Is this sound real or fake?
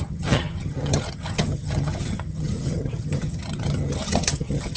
fake